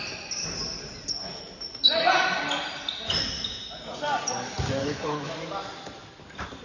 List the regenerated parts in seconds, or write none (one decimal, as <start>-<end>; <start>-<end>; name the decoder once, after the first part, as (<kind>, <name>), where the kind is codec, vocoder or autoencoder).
4.8-5.3 (codec, HILCodec)